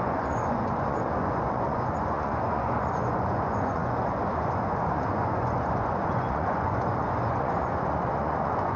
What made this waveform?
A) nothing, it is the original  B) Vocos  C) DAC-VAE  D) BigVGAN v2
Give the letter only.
B